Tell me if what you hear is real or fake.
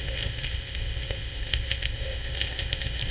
fake